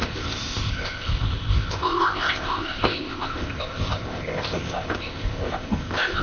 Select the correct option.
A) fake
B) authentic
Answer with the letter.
A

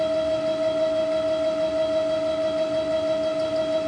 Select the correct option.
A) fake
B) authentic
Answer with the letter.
B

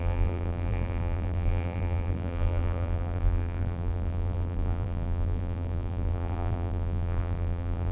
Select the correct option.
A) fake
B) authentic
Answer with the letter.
A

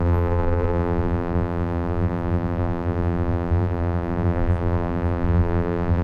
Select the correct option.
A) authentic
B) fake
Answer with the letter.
B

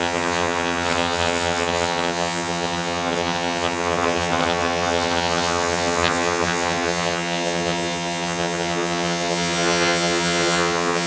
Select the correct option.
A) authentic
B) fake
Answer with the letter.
B